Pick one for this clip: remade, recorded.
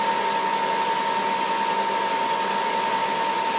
recorded